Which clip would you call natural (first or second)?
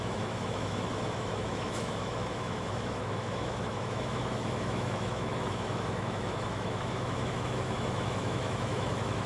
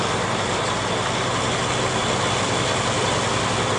second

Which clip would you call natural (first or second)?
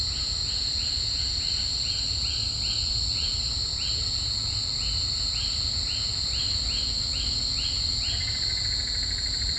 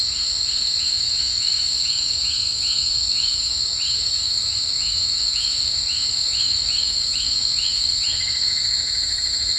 first